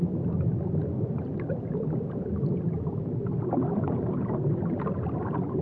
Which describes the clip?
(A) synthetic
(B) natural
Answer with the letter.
B